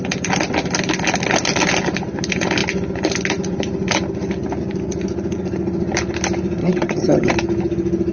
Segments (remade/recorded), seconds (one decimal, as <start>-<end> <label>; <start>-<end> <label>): 0.0-6.6 recorded; 6.6-7.3 remade; 7.3-8.1 recorded